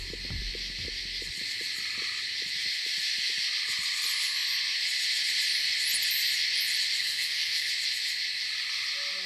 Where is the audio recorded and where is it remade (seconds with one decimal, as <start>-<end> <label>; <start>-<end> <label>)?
0.0-7.0 recorded; 7.0-7.7 remade; 7.7-9.3 recorded